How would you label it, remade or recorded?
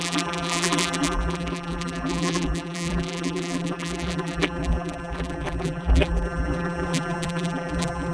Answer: remade